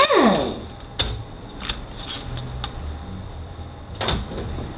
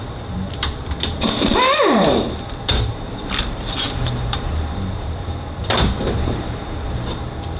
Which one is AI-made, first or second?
second